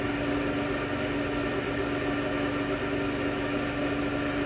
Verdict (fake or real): real